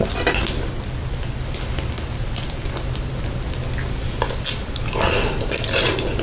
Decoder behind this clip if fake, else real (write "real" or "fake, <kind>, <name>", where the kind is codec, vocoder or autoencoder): real